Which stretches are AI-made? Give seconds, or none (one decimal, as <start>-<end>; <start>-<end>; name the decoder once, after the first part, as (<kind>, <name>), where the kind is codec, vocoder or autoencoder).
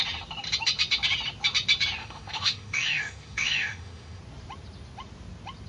2.0-4.2 (autoencoder, DAC-VAE)